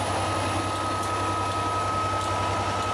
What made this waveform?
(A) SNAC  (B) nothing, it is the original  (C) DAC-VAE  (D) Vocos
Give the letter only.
B